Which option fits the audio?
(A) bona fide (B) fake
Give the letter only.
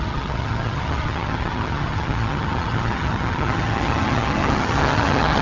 B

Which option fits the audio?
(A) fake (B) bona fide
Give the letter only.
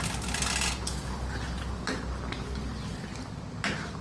B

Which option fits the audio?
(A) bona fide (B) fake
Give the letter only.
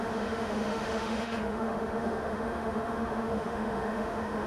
B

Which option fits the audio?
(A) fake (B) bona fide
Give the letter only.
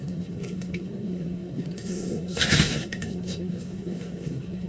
A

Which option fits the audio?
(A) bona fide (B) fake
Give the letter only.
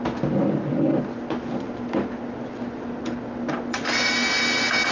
A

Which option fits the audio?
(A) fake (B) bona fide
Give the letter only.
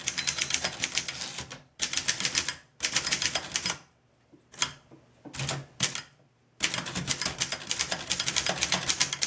A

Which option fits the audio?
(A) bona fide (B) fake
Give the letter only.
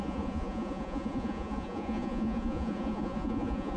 B